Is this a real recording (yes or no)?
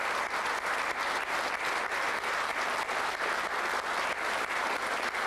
yes